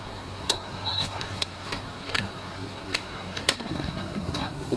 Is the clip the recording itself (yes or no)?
no